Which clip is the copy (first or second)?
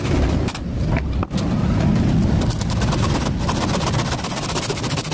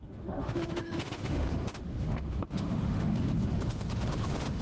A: second